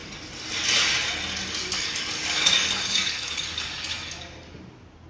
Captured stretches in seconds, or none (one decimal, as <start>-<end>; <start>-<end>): 0.0-1.6; 4.2-5.1